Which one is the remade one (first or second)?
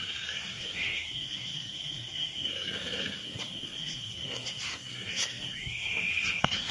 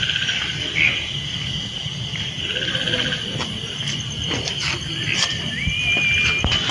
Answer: first